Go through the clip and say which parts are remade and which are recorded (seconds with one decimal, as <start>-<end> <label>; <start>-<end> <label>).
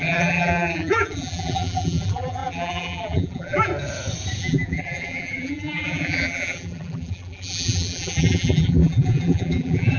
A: 0.0-3.7 remade; 3.7-4.4 recorded; 4.4-10.0 remade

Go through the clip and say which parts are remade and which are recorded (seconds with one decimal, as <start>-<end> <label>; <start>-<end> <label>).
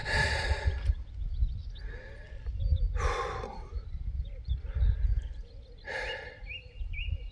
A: 0.0-7.3 recorded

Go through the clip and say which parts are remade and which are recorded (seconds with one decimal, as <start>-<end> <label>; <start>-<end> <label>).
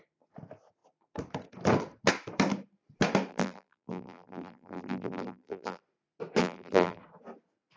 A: 0.0-3.3 recorded; 3.3-5.8 remade; 5.8-6.4 recorded; 6.4-7.0 remade; 7.0-7.8 recorded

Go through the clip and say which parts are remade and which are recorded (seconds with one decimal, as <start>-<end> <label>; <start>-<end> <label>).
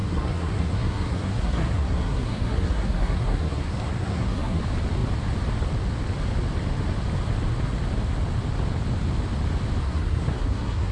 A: 0.0-4.6 remade; 4.6-9.8 recorded; 9.8-10.9 remade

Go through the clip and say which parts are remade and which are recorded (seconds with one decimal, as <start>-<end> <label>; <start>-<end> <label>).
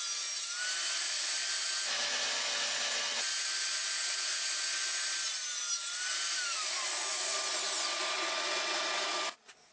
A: 0.0-9.7 recorded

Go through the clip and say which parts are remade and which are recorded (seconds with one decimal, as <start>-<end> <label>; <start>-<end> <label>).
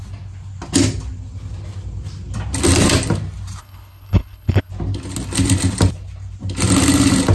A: 0.0-3.6 recorded; 3.6-4.7 remade; 4.7-7.3 recorded